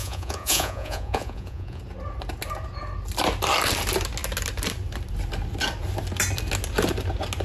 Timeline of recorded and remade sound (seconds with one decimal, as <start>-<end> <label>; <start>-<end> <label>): 0.0-1.8 remade; 1.8-7.4 recorded